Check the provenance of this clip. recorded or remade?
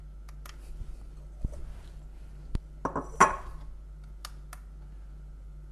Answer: recorded